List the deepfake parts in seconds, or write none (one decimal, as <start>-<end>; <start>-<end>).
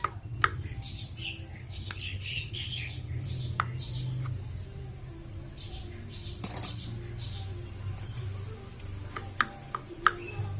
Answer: 1.5-3.3